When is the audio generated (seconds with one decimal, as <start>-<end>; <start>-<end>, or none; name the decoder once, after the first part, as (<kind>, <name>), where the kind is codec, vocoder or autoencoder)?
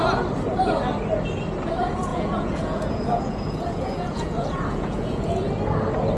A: 2.1-5.5 (vocoder, Vocos)